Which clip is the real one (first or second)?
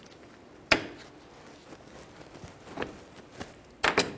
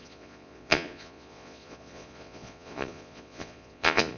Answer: first